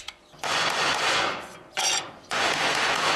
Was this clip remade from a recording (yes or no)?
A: yes